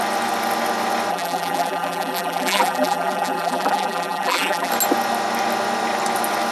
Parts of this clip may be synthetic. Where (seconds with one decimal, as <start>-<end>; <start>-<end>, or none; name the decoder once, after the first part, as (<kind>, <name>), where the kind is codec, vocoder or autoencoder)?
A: 1.1-4.7 (vocoder, BigVGAN v2)